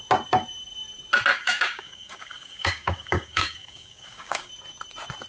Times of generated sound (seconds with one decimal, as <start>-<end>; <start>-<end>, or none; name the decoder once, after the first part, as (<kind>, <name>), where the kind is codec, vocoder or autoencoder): 1.3-4.5 (codec, DAC)